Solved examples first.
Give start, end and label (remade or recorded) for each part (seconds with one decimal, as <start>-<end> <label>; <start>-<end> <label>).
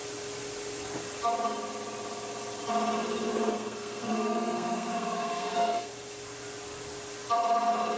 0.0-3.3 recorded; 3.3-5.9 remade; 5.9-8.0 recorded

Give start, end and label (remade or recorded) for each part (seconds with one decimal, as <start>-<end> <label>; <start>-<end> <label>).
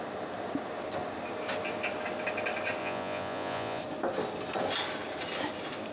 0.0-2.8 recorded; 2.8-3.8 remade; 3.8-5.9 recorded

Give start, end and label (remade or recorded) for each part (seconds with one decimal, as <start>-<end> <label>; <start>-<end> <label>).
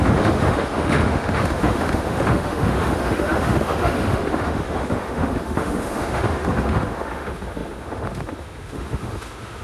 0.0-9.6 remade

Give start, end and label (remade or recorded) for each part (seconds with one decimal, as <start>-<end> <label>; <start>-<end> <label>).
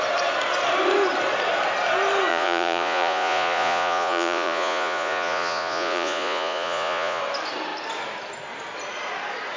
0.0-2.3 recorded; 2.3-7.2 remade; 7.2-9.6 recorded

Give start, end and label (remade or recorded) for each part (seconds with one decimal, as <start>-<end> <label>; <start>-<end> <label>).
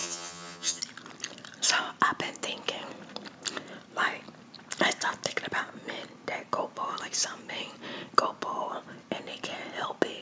0.0-0.8 remade; 0.8-10.2 recorded